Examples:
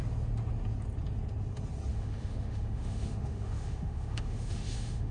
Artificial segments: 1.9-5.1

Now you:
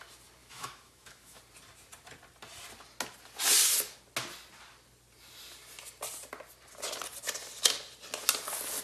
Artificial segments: 0.4-1.4

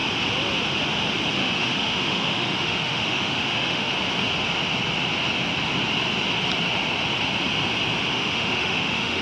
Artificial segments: 1.4-3.9; 8.1-9.2

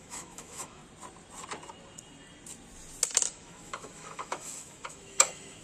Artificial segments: 0.0-0.8; 3.3-5.6